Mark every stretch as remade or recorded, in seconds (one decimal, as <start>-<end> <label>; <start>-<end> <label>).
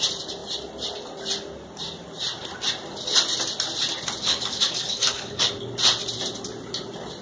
0.0-4.2 recorded; 4.2-5.5 remade; 5.5-7.2 recorded